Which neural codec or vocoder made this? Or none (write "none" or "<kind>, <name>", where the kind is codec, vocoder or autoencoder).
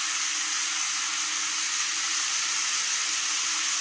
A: none